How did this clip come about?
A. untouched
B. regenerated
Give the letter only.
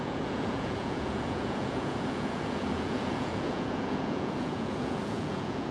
B